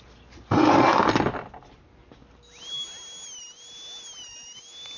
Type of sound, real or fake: real